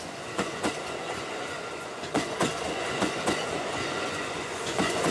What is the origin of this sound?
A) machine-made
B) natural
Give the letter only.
A